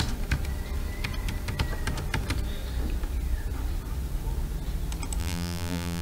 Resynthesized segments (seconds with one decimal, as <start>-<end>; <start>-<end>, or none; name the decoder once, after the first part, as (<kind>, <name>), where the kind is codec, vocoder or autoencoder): 5.2-6.0 (vocoder, BigVGAN v2)

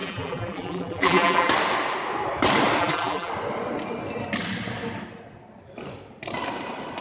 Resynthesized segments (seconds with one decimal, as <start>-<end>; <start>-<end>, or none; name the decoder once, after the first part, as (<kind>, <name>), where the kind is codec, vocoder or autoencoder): 0.0-1.5 (vocoder, BigVGAN v2); 2.8-3.3